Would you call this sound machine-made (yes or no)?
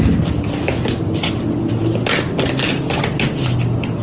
no